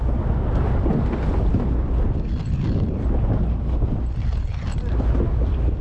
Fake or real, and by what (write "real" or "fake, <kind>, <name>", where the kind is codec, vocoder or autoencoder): real